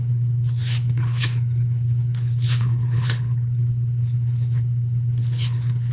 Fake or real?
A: fake